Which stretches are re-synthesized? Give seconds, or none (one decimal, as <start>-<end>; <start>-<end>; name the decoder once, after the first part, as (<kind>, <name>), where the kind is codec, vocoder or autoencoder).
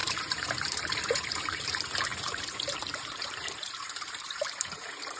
0.0-1.7 (vocoder, BigVGAN v2); 2.1-5.2